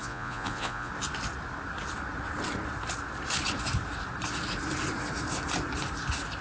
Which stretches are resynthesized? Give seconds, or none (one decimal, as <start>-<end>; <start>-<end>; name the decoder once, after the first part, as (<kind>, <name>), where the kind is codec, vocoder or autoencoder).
0.0-0.9 (vocoder, Vocos)